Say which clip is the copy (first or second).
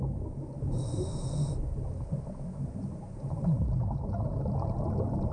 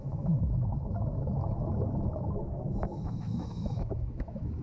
second